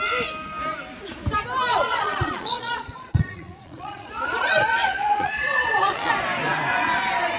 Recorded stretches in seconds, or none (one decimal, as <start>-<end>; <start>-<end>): 0.0-1.7; 6.1-7.4